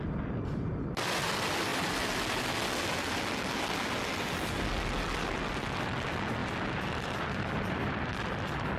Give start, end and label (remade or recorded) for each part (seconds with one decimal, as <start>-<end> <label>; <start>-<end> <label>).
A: 0.0-6.4 recorded; 6.4-8.8 remade